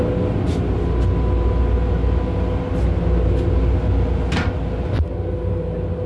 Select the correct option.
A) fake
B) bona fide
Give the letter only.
B